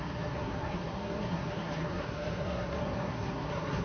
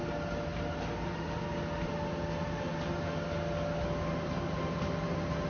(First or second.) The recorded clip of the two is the second